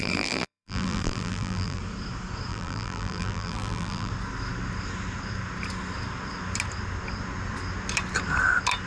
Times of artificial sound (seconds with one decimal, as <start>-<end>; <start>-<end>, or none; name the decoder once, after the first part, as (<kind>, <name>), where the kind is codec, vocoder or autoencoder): 0.0-1.8 (vocoder, BigVGAN v2); 2.5-4.1